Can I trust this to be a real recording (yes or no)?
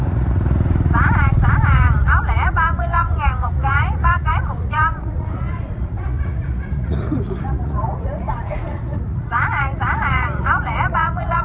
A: no